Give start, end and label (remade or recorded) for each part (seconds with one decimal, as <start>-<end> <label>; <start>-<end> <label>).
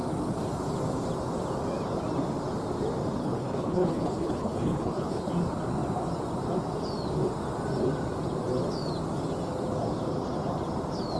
0.0-3.2 recorded; 3.2-5.3 remade; 5.3-11.2 recorded